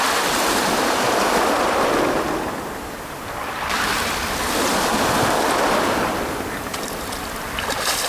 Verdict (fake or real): real